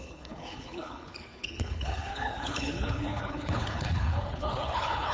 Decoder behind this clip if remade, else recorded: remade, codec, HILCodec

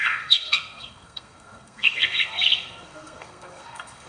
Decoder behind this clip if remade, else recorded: remade, codec, SNAC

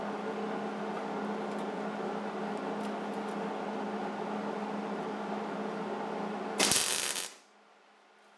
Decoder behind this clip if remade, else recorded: recorded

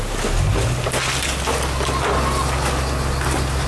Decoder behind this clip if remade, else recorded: recorded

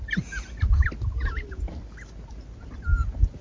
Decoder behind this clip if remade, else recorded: recorded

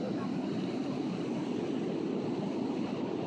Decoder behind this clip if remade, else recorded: recorded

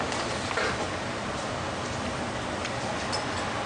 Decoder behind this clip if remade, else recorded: recorded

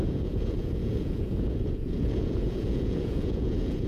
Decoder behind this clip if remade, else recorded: remade, vocoder, Vocos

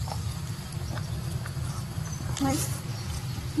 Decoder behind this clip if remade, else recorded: recorded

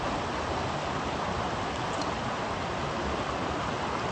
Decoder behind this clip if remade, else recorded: recorded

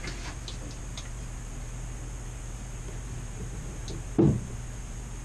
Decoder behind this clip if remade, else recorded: recorded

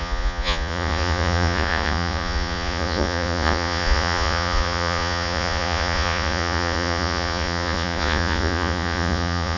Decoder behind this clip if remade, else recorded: remade, vocoder, Vocos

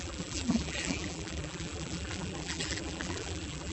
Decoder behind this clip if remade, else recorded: remade, vocoder, BigVGAN v2